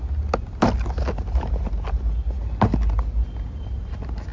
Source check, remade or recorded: recorded